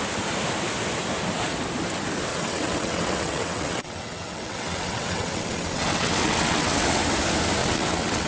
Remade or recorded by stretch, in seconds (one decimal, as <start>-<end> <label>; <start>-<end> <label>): 0.0-2.3 recorded; 2.3-7.0 remade; 7.0-7.6 recorded; 7.6-8.3 remade

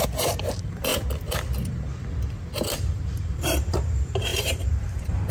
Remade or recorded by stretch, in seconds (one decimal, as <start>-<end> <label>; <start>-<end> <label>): 0.0-0.9 remade; 0.9-2.8 recorded; 2.8-5.3 remade

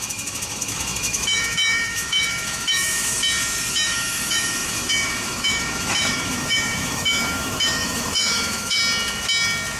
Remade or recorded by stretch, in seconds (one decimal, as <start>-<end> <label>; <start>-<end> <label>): 0.0-3.2 remade; 3.2-3.7 recorded; 3.7-8.8 remade; 8.8-9.8 recorded